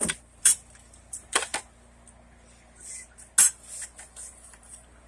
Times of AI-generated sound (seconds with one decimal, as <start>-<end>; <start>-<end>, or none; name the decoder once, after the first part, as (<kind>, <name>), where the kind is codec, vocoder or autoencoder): 0.0-1.5 (vocoder, BigVGAN v2); 4.6-5.1